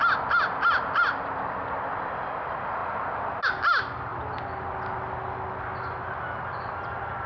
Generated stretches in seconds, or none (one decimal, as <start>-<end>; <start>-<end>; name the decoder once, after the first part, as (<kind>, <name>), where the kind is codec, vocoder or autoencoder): none